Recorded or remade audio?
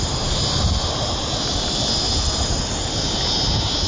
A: recorded